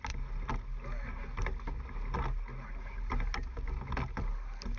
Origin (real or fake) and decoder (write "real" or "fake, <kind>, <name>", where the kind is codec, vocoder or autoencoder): real